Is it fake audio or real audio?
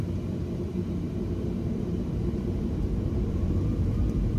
fake